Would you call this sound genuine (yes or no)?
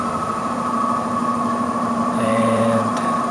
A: no